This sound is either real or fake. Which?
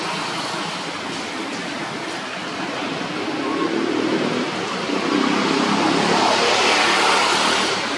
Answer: real